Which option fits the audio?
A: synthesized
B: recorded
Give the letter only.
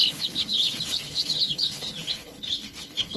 A